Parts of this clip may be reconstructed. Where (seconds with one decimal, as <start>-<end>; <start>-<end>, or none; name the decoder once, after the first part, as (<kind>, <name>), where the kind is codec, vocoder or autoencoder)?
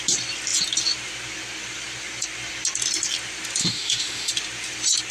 3.6-4.3 (autoencoder, DAC-VAE)